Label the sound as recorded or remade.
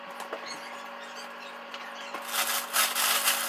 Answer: recorded